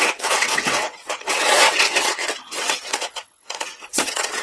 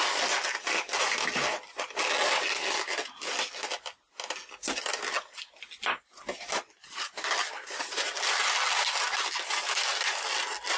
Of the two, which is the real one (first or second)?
second